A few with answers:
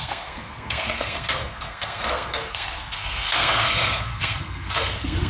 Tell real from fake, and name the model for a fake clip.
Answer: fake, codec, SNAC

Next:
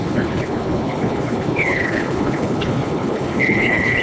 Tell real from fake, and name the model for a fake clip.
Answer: fake, codec, HILCodec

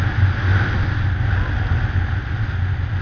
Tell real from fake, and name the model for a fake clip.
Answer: real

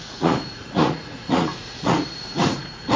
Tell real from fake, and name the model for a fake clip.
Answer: fake, vocoder, Vocos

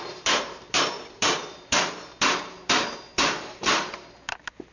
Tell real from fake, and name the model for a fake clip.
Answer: fake, vocoder, BigVGAN v2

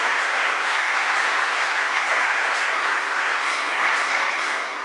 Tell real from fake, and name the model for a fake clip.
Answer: fake, codec, SNAC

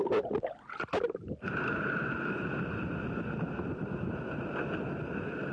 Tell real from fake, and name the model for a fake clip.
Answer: real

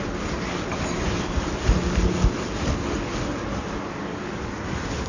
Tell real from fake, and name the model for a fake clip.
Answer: real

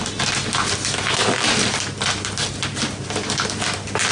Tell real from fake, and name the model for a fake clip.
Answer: real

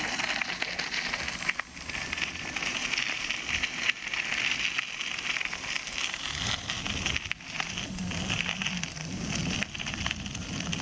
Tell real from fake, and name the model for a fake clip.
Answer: real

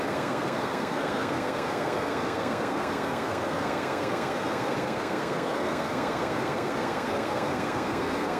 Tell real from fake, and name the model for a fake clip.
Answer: fake, codec, SNAC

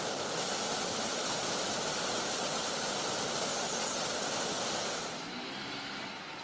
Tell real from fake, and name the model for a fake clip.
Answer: real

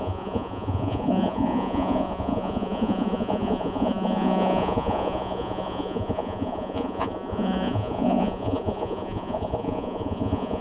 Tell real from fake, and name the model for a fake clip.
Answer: fake, vocoder, Vocos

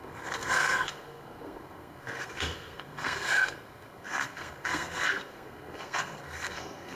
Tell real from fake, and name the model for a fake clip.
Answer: fake, codec, SNAC